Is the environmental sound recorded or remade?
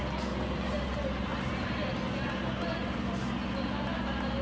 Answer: recorded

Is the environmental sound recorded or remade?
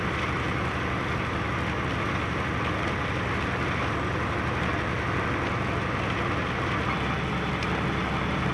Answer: recorded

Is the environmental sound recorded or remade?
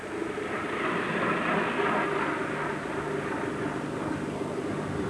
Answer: recorded